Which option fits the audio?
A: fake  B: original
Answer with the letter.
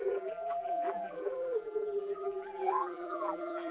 A